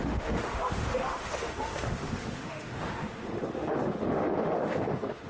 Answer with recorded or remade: remade